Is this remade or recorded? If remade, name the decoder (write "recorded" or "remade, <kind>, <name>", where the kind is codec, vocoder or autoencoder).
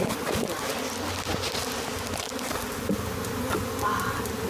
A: recorded